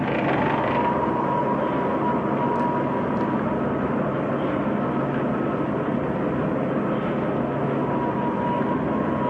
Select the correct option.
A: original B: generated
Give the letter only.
A